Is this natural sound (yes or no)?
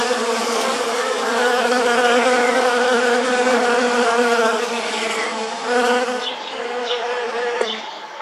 no